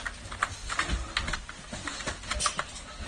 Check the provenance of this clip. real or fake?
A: real